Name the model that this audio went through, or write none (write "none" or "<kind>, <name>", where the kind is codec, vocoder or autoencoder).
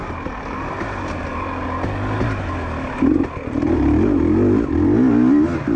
none